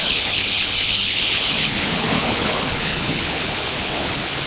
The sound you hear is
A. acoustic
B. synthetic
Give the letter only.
B